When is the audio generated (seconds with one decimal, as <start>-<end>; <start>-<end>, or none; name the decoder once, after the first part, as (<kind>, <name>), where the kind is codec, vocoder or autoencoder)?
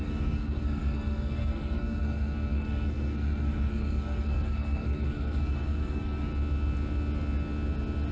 0.0-6.3 (codec, SNAC)